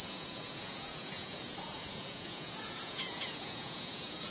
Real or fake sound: fake